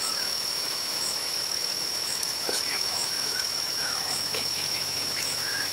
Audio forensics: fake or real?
fake